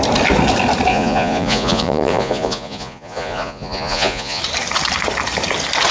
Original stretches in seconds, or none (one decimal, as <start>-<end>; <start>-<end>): 0.0-0.9; 4.4-5.9

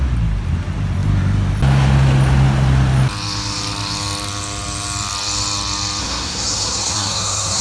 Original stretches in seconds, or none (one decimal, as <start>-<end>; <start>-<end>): 0.0-6.0

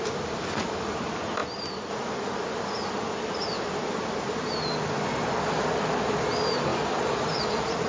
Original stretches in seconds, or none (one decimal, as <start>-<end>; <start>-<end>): 0.0-7.9

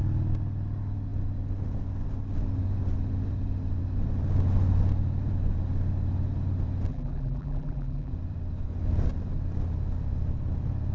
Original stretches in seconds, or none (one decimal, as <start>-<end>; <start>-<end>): 0.0-6.9; 8.1-10.9

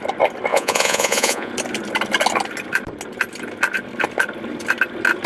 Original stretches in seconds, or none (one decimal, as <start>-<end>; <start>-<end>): 0.0-0.5; 1.5-5.3

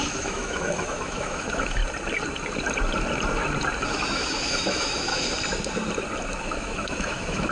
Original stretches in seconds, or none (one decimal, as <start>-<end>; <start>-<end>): 1.8-3.9; 5.1-6.4